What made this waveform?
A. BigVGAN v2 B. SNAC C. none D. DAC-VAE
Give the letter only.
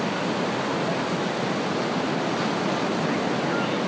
C